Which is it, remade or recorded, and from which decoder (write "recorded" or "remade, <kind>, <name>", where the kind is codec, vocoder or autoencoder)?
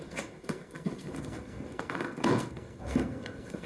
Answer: remade, codec, SNAC